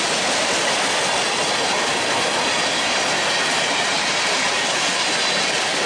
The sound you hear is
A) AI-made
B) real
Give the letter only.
B